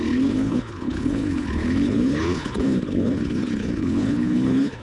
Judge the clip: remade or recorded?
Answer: remade